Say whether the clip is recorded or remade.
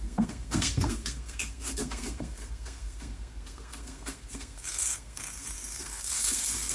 remade